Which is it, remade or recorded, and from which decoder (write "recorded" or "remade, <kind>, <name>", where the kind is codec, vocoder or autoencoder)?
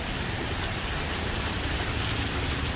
recorded